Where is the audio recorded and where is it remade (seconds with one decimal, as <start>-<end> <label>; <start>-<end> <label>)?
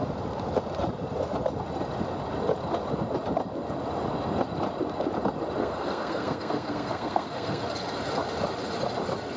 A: 0.0-5.6 recorded; 5.6-7.6 remade; 7.6-9.4 recorded